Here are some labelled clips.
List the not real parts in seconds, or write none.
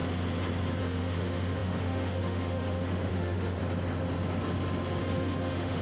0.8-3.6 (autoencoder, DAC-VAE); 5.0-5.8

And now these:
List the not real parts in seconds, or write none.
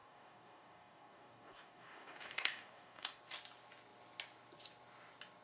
0.0-3.2 (codec, DAC)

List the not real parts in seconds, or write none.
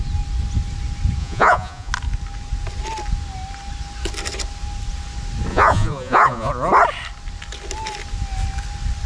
1.2-1.9 (vocoder, Vocos); 5.5-6.5